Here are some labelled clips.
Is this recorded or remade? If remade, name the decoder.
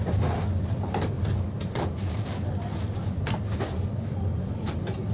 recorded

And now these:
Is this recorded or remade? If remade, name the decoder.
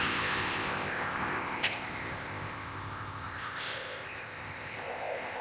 remade, codec, ZipCodec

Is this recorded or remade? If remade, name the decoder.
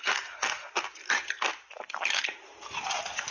recorded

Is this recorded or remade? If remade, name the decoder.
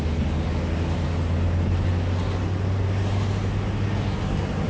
recorded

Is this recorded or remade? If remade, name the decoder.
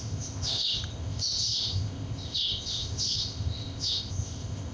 remade, codec, ZipCodec